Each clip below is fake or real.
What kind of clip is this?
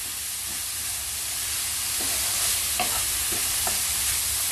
real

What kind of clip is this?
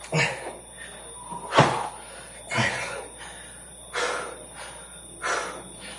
real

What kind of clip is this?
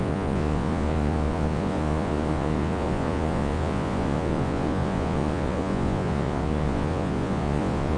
fake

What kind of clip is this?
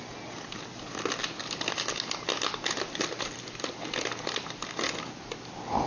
real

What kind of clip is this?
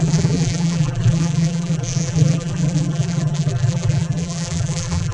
fake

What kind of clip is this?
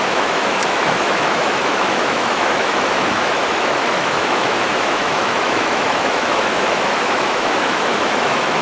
fake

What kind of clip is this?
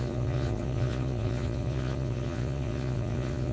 fake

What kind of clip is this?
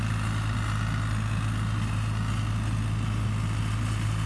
real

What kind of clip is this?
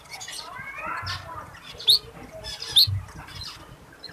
real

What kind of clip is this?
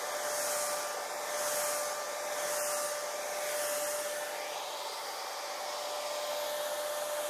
real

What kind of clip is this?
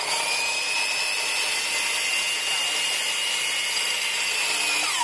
real